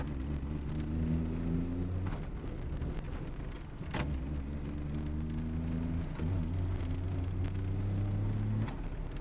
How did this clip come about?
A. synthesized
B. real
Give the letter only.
B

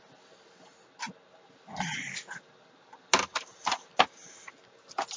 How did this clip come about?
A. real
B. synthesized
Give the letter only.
A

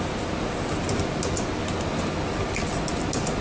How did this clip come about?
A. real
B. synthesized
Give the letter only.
A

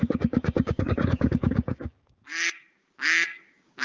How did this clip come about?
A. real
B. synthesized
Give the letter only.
B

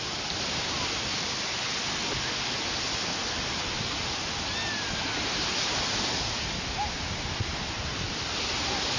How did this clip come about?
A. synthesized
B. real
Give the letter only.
B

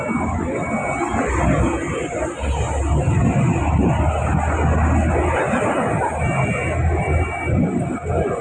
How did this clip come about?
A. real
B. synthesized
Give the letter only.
A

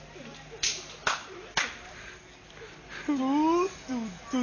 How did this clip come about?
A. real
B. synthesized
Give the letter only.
A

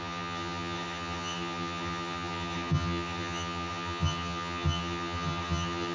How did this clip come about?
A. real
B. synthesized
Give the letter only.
B